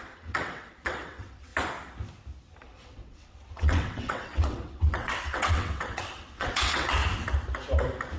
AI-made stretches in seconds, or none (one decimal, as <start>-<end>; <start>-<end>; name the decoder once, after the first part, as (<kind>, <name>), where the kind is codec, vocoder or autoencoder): 0.0-1.5 (vocoder, WaveNeXt); 2.6-7.0